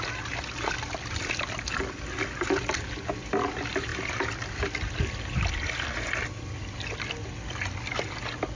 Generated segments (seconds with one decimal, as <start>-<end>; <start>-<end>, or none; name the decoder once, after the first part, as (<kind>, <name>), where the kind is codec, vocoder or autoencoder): none